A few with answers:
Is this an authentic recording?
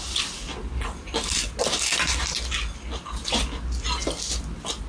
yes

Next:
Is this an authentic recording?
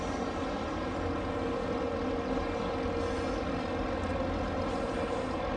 yes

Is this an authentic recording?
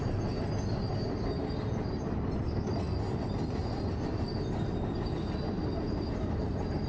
yes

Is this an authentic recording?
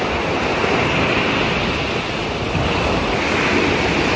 yes